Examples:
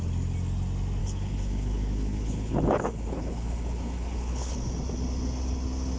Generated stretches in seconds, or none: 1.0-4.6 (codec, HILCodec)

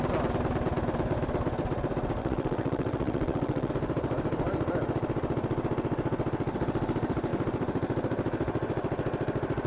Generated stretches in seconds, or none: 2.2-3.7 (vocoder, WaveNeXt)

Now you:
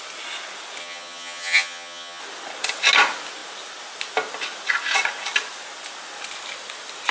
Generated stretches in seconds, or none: 0.8-2.2 (vocoder, HiFi-GAN)

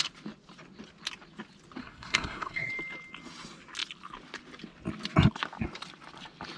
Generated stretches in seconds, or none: 1.8-2.7 (codec, SNAC)

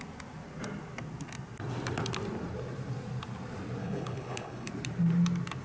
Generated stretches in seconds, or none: 3.8-4.7 (codec, HILCodec)

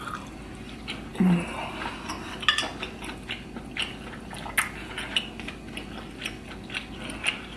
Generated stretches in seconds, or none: none

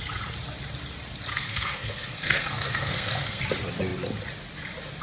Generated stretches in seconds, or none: 1.3-3.4 (codec, SNAC)